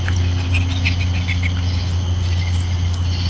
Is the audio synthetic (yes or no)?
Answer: no